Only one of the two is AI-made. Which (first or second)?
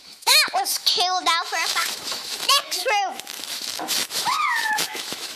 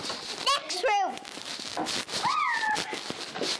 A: first